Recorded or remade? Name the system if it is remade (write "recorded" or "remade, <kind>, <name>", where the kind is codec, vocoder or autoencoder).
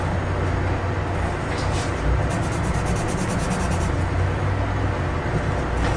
recorded